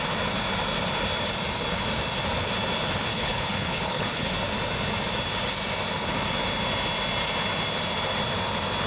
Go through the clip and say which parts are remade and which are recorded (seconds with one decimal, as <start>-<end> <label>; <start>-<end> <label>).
0.0-3.1 recorded; 3.1-4.3 remade; 4.3-8.9 recorded